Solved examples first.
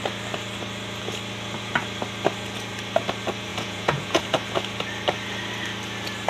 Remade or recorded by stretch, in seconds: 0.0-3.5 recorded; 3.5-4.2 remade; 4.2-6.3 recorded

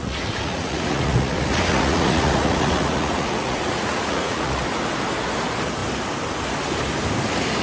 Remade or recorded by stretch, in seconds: 0.0-4.6 remade; 4.6-7.6 recorded

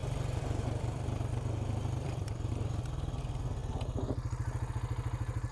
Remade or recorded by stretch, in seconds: 0.0-2.5 remade; 2.5-5.5 recorded

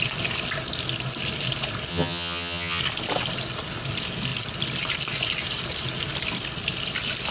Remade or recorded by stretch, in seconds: 0.0-1.9 recorded; 1.9-2.8 remade; 2.8-7.3 recorded

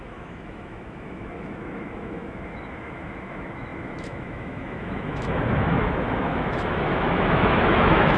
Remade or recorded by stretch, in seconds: 0.0-8.2 remade

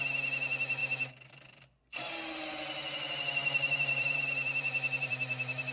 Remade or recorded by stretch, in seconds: 0.0-3.4 recorded; 3.4-5.7 remade

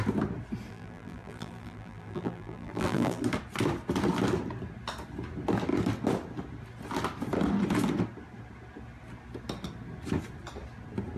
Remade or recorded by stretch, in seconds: 0.0-0.7 recorded; 0.7-3.2 remade; 3.2-11.2 recorded

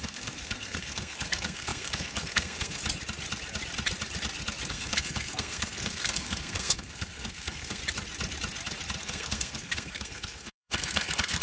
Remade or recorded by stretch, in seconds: 0.0-2.8 remade; 2.8-4.7 recorded; 4.7-7.8 remade; 7.8-9.0 recorded; 9.0-11.4 remade